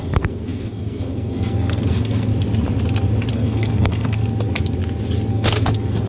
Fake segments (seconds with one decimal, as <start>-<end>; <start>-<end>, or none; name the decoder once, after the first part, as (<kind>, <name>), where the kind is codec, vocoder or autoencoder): 0.0-2.3 (codec, SNAC); 3.3-4.2; 5.3-6.1